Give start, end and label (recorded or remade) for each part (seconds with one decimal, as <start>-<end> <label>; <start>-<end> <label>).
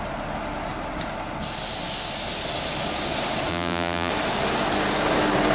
0.0-3.5 recorded; 3.5-4.1 remade; 4.1-5.5 recorded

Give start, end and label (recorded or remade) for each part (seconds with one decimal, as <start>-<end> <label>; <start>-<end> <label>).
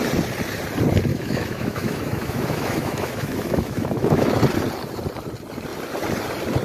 0.0-1.1 recorded; 1.1-4.4 remade; 4.4-6.6 recorded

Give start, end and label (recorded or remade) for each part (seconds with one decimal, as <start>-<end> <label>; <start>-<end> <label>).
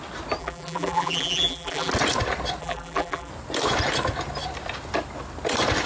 0.0-0.4 recorded; 0.4-1.9 remade; 1.9-2.6 recorded; 2.6-3.3 remade; 3.3-5.8 recorded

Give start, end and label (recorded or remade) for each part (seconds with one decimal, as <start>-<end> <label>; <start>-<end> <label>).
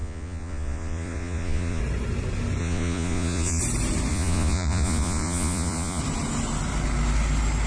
0.0-1.8 remade; 1.8-2.6 recorded; 2.6-3.6 remade; 3.6-4.1 recorded; 4.1-6.0 remade; 6.0-7.7 recorded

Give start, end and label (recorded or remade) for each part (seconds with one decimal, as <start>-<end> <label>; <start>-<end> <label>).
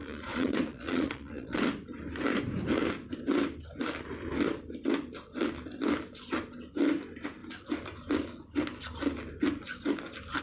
0.0-1.6 remade; 1.6-10.4 recorded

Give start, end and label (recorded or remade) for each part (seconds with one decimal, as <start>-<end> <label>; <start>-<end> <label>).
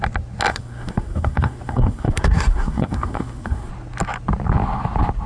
0.0-0.5 recorded; 0.5-3.7 remade; 3.7-5.3 recorded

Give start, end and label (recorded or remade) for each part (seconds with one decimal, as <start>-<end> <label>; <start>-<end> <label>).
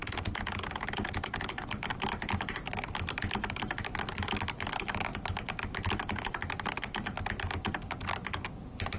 0.0-9.0 recorded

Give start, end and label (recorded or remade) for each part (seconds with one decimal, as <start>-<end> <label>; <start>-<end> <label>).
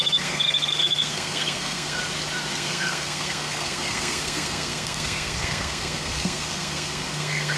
0.0-2.0 remade; 2.0-2.5 recorded; 2.5-7.6 remade